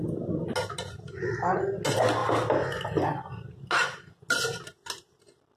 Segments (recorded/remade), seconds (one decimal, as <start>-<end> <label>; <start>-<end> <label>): 0.0-5.6 recorded